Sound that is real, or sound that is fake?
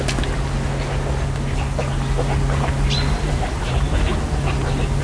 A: real